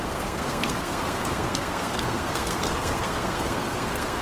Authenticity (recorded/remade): remade